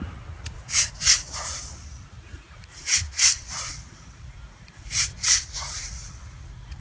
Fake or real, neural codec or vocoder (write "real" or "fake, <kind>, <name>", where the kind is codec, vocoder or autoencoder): fake, vocoder, Vocos